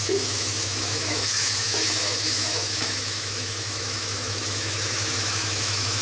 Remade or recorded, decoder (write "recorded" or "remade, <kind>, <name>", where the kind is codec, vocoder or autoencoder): remade, autoencoder, DAC-VAE